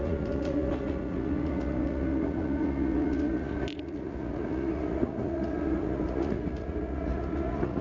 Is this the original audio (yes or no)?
no